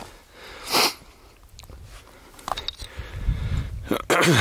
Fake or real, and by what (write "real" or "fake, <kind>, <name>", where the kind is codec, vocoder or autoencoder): real